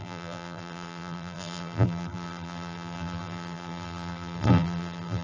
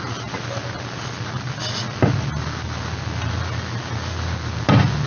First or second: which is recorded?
second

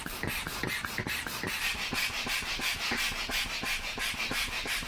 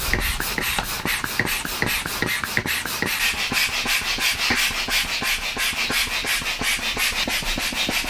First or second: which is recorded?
second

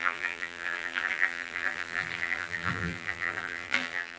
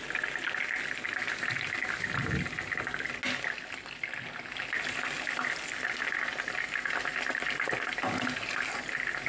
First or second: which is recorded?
second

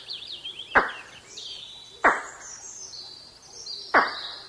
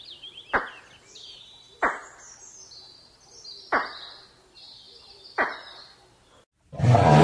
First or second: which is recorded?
second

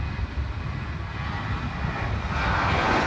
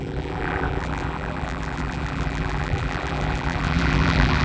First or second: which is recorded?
first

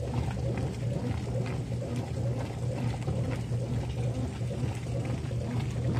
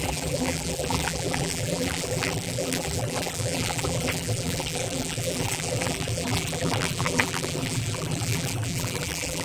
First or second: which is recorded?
first